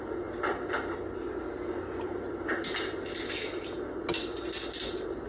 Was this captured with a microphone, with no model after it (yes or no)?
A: yes